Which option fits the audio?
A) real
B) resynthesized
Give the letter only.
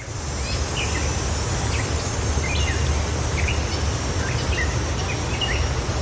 A